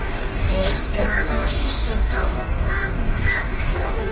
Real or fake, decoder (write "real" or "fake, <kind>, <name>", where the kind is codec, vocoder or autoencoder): fake, codec, DAC